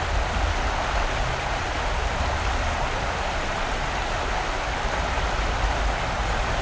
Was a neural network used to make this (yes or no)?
no